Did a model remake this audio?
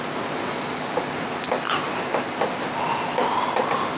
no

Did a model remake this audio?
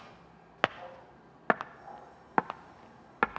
no